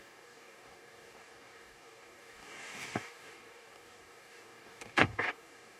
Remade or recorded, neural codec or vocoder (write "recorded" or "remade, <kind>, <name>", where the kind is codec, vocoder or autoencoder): remade, codec, DAC